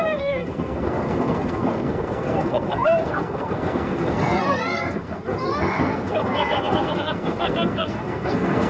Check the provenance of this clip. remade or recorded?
remade